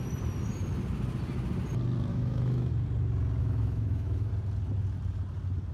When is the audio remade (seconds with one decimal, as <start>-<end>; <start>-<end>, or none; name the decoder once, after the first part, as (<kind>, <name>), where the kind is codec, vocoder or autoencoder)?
2.1-2.7 (autoencoder, DAC-VAE); 3.4-4.3